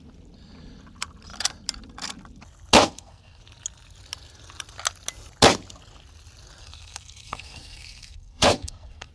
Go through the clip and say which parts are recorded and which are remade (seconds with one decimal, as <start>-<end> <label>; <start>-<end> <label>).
0.0-2.8 recorded; 2.8-3.4 remade; 3.4-6.6 recorded; 6.6-9.1 remade